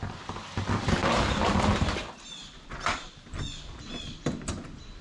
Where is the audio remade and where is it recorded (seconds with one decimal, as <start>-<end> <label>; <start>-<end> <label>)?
0.0-5.0 recorded